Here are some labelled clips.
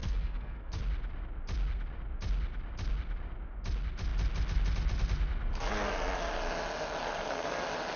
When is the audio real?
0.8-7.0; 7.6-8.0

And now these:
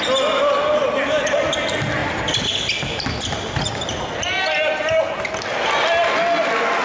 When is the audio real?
0.0-6.8

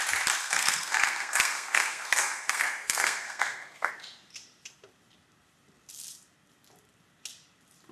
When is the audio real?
0.0-0.4; 3.9-7.9

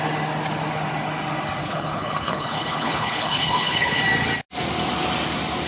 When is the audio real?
0.0-1.6; 4.0-5.7